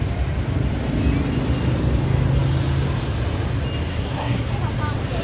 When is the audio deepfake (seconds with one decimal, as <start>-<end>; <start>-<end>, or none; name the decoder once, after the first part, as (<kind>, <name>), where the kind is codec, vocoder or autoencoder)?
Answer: 3.9-4.5 (codec, SNAC)